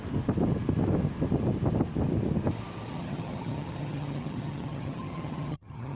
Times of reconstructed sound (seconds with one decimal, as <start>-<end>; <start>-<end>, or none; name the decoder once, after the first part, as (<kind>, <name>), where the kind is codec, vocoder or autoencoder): 2.9-6.0 (vocoder, HiFi-GAN)